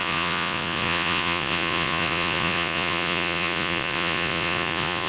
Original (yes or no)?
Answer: no